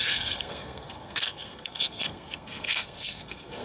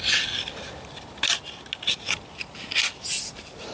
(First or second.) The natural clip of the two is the second